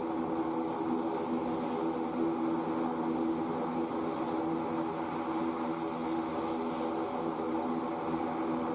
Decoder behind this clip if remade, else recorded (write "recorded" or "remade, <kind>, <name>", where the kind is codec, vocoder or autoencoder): recorded